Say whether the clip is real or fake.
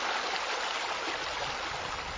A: real